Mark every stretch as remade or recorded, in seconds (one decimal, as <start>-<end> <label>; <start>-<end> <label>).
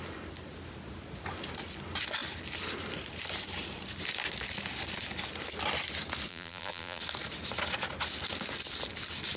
0.0-6.3 recorded; 6.3-7.0 remade; 7.0-9.4 recorded